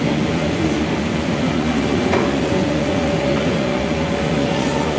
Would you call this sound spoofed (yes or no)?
yes